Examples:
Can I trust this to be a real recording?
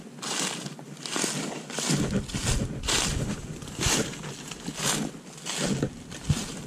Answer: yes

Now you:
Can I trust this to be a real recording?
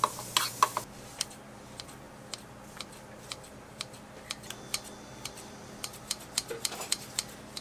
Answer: yes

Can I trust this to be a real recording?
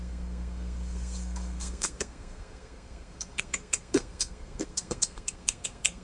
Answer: no